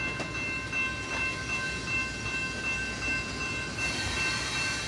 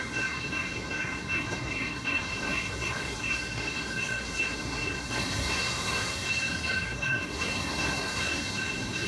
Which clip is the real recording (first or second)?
first